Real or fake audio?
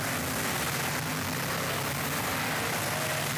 real